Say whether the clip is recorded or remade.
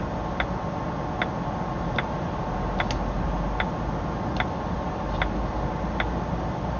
recorded